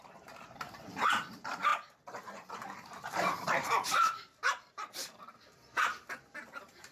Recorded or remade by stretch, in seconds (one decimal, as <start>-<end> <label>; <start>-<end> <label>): 0.0-6.9 remade